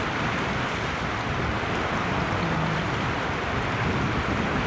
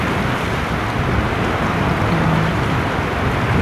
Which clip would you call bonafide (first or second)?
second